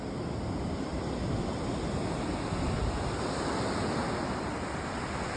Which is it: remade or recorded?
recorded